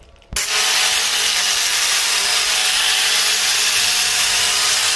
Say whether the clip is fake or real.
real